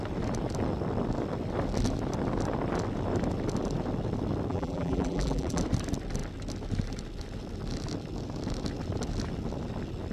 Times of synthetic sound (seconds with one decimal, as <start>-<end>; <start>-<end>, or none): 4.5-5.6